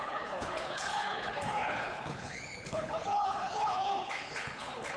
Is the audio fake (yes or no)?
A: yes